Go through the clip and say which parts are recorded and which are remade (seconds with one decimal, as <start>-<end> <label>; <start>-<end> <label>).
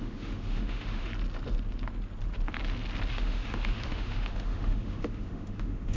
0.0-1.1 remade; 1.1-3.1 recorded; 3.1-6.0 remade